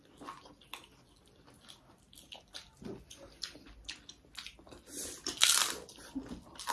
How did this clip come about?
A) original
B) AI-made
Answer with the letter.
A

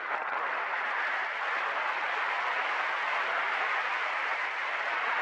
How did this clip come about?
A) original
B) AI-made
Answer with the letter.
A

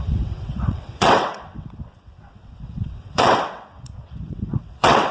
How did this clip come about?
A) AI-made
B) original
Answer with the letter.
A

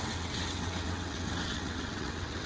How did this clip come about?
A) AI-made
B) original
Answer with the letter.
A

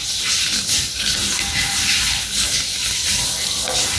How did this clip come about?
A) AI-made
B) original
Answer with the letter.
B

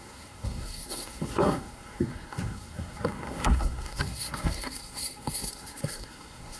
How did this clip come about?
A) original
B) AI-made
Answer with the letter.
B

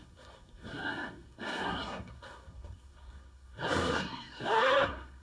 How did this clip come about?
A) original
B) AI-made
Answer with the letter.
B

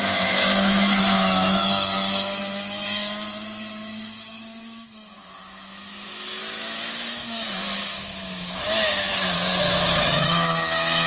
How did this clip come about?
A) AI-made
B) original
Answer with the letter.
A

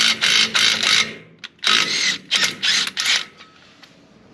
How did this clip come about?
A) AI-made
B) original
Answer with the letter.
B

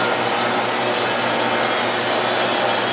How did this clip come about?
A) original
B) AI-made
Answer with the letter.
A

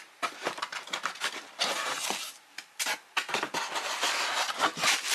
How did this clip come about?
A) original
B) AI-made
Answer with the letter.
A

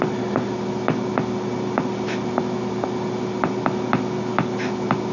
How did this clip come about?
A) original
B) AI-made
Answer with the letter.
A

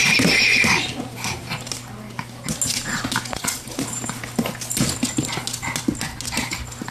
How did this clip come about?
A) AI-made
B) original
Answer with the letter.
B